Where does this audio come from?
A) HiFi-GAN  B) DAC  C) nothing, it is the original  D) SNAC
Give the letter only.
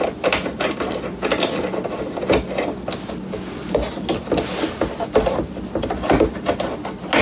C